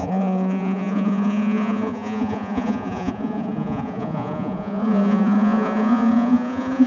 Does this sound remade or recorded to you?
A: remade